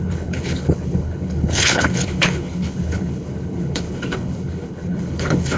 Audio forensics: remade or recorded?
remade